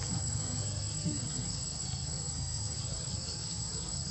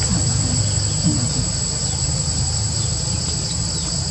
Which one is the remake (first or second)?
first